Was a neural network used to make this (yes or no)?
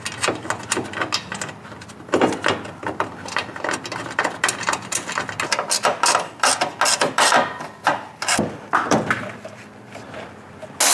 no